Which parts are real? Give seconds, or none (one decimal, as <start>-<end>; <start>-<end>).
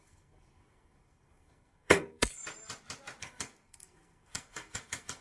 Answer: 2.4-3.2